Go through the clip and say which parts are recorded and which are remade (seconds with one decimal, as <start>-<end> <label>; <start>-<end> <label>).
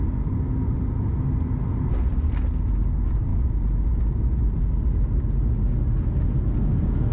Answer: 0.0-7.1 recorded